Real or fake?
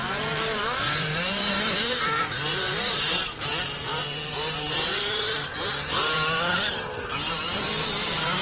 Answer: fake